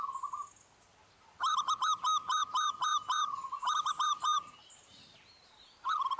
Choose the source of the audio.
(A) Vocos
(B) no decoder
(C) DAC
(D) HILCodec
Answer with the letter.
B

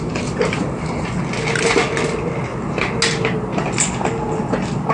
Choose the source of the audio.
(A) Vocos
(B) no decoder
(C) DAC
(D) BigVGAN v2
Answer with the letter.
B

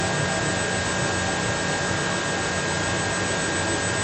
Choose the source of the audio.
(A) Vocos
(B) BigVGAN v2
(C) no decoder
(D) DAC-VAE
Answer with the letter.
C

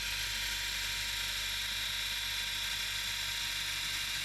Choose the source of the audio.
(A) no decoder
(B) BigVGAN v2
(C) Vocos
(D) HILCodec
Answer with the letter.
A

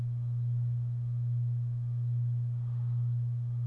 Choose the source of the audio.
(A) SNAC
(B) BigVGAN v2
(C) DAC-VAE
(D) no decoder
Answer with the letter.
D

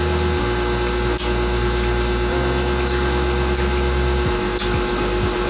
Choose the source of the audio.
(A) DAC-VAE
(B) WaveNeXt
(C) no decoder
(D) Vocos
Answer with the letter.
C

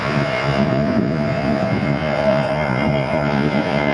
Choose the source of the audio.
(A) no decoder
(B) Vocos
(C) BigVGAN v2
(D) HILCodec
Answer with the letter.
B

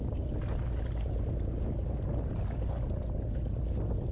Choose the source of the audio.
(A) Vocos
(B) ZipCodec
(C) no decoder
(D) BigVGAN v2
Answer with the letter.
C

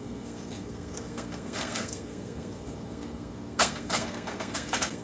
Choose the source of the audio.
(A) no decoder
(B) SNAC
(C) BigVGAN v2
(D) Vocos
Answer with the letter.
B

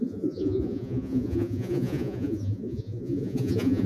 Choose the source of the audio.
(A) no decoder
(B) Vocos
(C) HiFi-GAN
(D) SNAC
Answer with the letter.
B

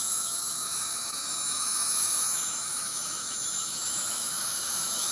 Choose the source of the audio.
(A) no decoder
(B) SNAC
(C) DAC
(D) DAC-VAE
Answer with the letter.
D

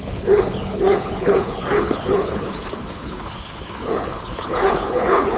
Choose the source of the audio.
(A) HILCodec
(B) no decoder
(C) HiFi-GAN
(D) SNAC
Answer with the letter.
A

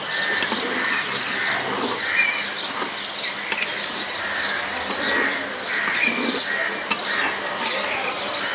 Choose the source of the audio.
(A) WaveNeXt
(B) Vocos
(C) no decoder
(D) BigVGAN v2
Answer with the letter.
C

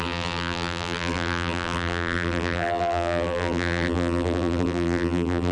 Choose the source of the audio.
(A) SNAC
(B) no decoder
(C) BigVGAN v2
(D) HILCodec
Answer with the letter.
C